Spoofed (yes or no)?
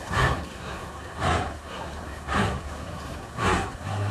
yes